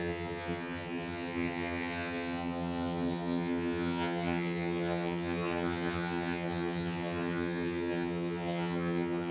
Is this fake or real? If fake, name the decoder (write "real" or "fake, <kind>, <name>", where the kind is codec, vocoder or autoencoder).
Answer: fake, vocoder, HiFi-GAN